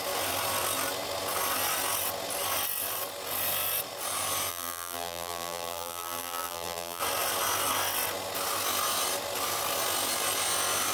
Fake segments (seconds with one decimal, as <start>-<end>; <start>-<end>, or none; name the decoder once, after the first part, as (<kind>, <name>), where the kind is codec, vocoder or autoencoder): 4.5-7.0 (vocoder, BigVGAN v2)